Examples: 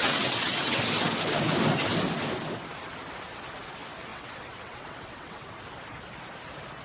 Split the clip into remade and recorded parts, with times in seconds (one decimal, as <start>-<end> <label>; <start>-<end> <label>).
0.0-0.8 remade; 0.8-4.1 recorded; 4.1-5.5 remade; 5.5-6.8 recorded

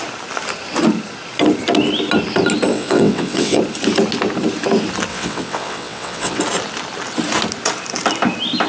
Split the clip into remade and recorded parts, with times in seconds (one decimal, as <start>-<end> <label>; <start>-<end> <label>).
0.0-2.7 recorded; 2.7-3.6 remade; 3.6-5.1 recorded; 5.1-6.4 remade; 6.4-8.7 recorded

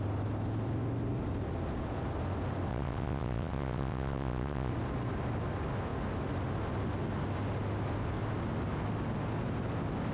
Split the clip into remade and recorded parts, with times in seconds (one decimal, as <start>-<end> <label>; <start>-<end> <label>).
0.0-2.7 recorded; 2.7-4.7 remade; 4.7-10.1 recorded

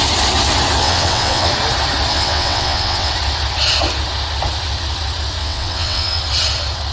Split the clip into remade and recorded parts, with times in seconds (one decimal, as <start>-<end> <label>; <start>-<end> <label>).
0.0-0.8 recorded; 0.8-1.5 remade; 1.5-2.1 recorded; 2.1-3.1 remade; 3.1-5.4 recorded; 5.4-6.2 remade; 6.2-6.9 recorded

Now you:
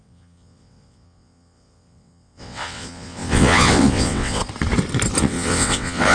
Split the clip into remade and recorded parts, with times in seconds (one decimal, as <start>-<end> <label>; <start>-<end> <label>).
0.0-4.4 remade; 4.4-5.2 recorded; 5.2-6.1 remade

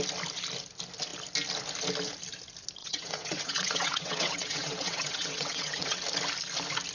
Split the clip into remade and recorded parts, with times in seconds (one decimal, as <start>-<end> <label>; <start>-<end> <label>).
0.0-2.8 recorded; 2.8-6.0 remade; 6.0-6.9 recorded